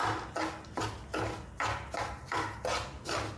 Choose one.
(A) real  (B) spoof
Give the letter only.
A